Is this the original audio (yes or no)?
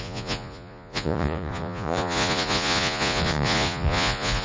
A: no